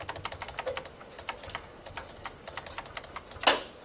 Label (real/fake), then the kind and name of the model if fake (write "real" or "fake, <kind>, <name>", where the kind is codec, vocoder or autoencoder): real